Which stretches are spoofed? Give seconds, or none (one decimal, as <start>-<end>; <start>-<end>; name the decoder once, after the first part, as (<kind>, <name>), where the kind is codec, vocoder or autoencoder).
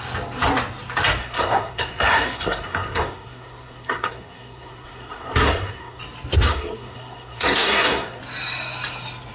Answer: 1.2-6.0 (codec, SNAC); 6.5-8.2